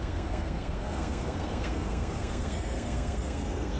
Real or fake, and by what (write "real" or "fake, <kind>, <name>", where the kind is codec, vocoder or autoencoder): fake, codec, SNAC